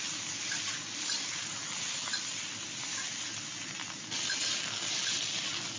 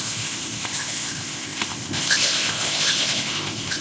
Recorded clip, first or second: first